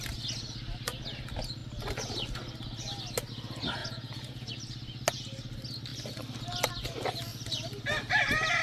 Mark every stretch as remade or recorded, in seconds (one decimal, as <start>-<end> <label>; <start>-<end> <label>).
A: 0.0-3.8 recorded; 3.8-4.5 remade; 4.5-8.6 recorded